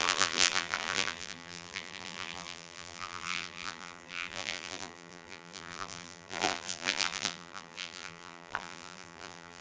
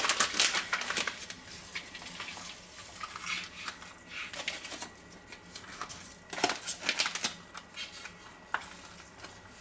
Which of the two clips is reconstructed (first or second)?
first